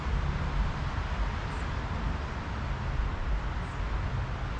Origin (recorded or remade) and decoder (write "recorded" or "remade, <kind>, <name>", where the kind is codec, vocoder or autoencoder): recorded